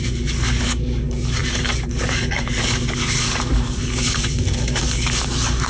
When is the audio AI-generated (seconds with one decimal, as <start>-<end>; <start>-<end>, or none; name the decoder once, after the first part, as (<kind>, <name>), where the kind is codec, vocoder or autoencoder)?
0.0-5.7 (codec, DAC)